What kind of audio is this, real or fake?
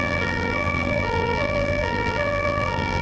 fake